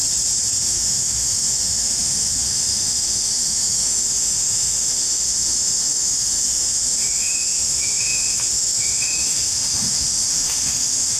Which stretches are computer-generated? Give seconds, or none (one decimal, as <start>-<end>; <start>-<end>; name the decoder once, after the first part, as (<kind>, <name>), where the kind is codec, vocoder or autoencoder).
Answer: 0.6-11.2 (autoencoder, DAC-VAE)